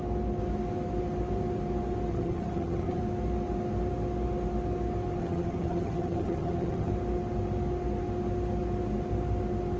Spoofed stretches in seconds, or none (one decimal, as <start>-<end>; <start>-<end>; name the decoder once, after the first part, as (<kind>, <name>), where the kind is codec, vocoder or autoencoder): 2.1-3.0 (vocoder, HiFi-GAN); 5.2-6.9